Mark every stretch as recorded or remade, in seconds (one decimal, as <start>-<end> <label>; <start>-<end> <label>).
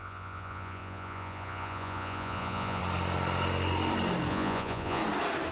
0.0-2.8 remade; 2.8-4.3 recorded; 4.3-5.0 remade; 5.0-5.5 recorded